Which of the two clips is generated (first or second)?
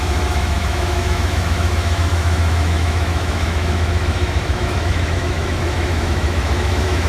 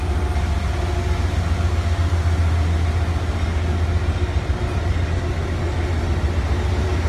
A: first